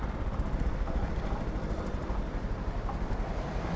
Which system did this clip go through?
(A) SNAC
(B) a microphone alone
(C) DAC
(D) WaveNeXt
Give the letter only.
B